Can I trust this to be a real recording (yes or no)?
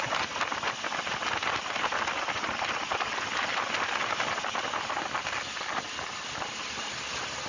yes